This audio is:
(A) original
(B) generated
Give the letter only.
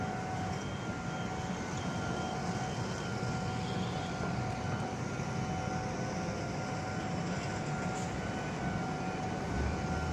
A